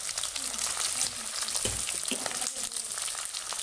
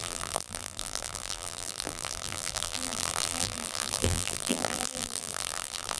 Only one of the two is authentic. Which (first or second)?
first